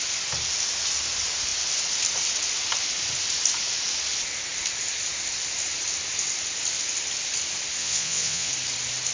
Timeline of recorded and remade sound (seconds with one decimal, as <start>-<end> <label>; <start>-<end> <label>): 0.0-7.8 recorded; 7.8-8.5 remade; 8.5-9.1 recorded